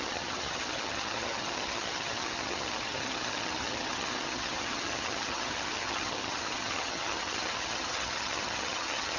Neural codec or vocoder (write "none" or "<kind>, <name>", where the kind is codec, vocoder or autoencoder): vocoder, HiFi-GAN